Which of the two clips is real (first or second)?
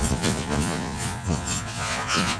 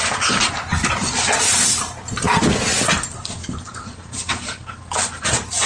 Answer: second